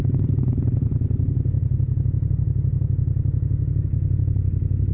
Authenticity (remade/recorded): recorded